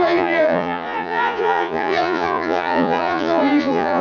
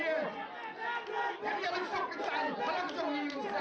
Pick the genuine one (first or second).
second